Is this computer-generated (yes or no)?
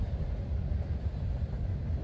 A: no